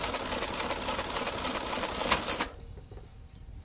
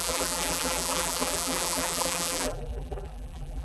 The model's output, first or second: second